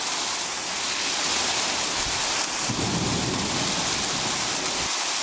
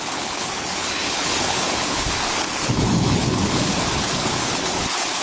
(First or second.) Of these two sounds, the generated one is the second